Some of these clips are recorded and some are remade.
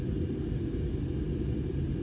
recorded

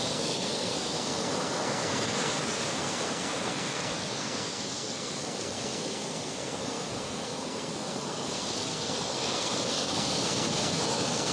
remade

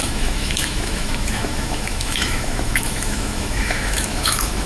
remade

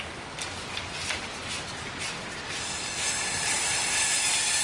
recorded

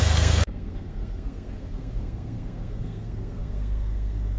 remade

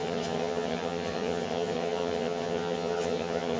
remade